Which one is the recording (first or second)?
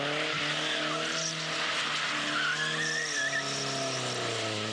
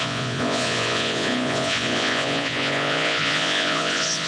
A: first